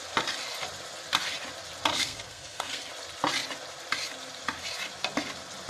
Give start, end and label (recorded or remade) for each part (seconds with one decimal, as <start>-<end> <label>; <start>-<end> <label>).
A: 0.0-1.9 recorded; 1.9-2.9 remade; 2.9-5.7 recorded